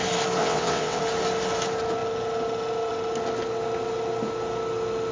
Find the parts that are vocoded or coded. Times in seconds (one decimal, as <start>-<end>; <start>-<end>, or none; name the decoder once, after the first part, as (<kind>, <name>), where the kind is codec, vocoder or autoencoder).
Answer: 0.4-1.0 (vocoder, WaveNeXt)